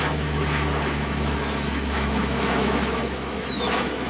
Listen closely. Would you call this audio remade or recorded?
remade